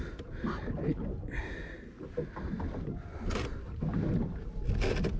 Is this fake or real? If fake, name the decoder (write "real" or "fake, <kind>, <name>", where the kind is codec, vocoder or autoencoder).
real